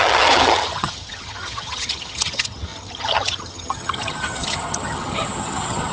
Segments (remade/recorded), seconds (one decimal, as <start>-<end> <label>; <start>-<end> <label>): 0.0-5.9 remade